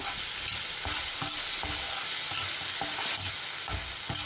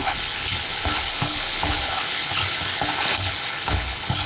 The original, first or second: first